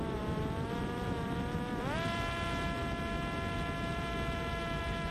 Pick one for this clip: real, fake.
fake